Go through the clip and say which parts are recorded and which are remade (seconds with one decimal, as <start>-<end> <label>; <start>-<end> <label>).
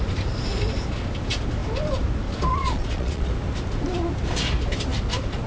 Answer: 0.0-2.5 recorded; 2.5-3.3 remade; 3.3-5.5 recorded